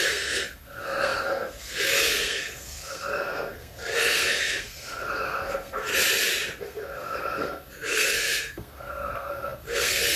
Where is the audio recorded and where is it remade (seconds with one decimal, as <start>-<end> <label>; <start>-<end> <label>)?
0.0-5.9 remade; 5.9-6.6 recorded; 6.6-10.2 remade